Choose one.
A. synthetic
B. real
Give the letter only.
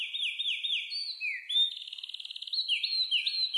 B